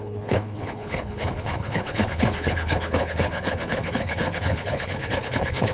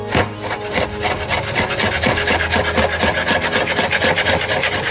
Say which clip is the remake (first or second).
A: first